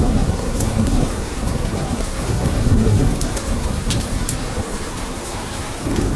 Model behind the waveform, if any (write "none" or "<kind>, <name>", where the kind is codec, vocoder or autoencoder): codec, SNAC